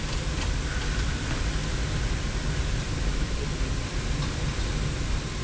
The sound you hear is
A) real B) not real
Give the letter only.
A